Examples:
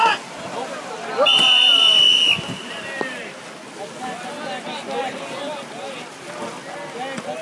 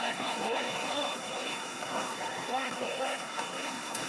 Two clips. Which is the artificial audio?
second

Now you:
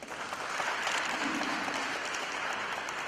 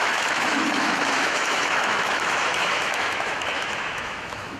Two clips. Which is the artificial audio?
second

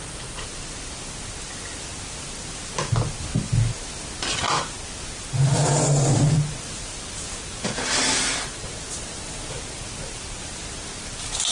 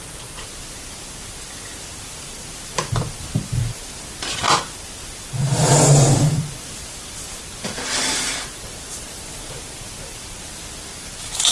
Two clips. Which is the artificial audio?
second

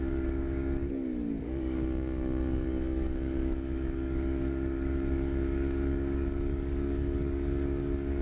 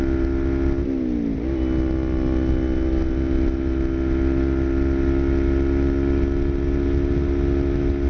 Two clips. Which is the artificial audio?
first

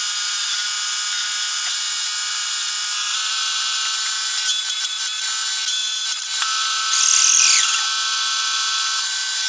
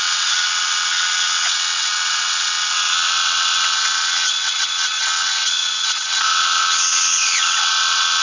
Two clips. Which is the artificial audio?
second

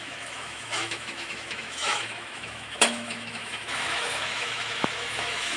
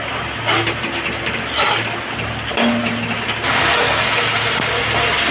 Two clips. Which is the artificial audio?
first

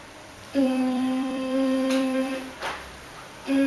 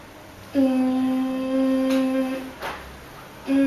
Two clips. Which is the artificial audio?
first